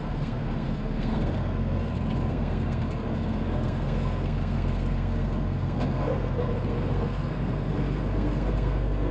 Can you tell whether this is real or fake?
fake